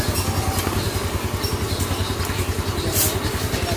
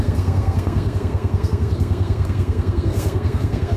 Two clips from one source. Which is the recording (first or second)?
first